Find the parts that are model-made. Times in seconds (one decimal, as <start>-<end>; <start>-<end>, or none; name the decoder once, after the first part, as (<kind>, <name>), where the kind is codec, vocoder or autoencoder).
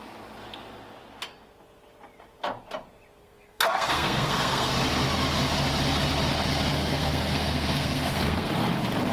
3.2-4.7 (codec, SNAC); 6.7-8.5